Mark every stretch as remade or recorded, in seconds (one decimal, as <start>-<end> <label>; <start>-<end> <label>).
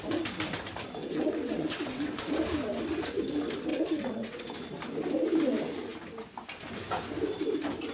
0.0-1.0 recorded; 1.0-2.2 remade; 2.2-3.7 recorded; 3.7-4.4 remade; 4.4-7.9 recorded